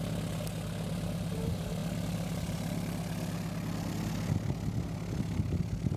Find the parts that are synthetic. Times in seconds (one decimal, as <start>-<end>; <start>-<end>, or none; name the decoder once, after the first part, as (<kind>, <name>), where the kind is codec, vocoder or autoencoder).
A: none